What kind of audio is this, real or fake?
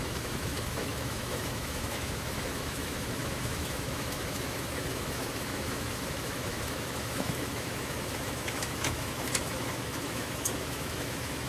fake